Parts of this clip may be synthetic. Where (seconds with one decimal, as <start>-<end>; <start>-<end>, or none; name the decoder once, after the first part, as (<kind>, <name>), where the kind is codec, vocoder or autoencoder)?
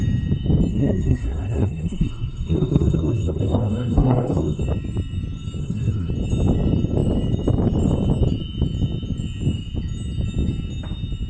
0.7-4.6 (codec, SNAC); 5.6-6.1